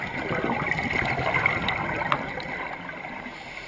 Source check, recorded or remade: recorded